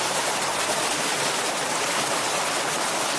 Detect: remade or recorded recorded